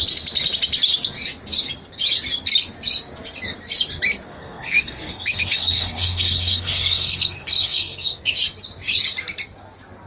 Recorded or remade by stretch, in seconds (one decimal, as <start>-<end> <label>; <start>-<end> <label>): 0.0-4.3 recorded; 4.3-8.4 remade; 8.4-10.1 recorded